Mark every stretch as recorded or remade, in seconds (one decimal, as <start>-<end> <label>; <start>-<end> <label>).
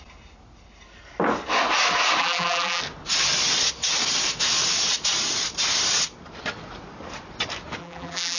0.0-2.2 recorded; 2.2-2.8 remade; 2.8-7.8 recorded; 7.8-8.4 remade